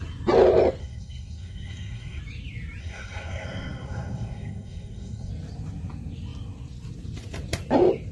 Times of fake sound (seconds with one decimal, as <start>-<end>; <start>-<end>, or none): 0.8-2.2; 2.8-5.3